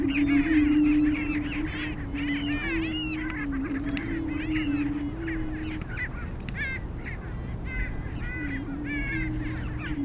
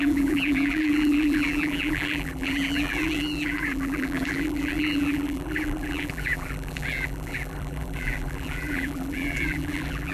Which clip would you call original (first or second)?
first